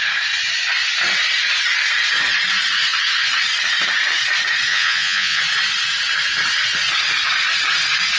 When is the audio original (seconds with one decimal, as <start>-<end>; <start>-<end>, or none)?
0.0-4.7; 5.4-8.2